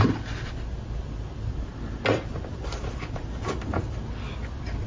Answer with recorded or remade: recorded